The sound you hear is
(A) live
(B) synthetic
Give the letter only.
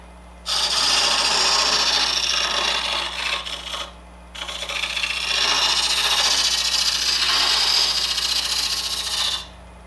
A